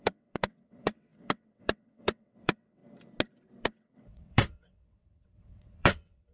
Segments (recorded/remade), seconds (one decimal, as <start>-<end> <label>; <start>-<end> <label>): 0.0-2.8 remade; 2.8-3.6 recorded; 3.6-6.3 remade